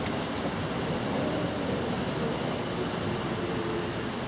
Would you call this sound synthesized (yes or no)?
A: no